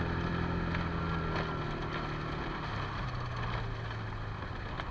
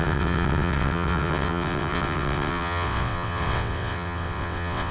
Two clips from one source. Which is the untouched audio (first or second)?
first